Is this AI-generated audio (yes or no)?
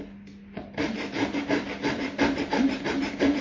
no